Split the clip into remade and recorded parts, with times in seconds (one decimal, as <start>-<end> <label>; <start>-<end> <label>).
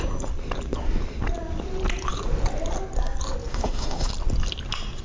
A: 0.0-3.5 recorded; 3.5-4.1 remade; 4.1-5.0 recorded